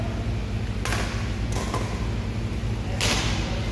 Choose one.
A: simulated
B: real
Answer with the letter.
B